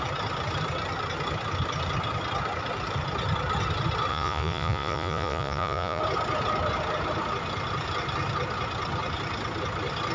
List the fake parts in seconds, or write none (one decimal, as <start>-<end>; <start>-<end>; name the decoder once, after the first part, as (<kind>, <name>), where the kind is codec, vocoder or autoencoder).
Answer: 4.1-6.0 (vocoder, Vocos)